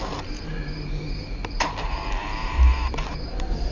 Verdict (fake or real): fake